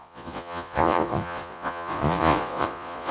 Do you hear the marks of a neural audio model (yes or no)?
yes